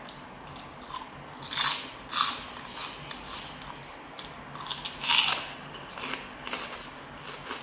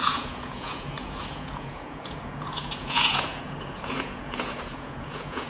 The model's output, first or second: second